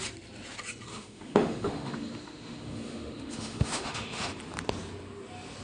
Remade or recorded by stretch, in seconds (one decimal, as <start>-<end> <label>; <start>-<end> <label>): 0.0-0.9 recorded; 0.9-4.3 remade; 4.3-5.6 recorded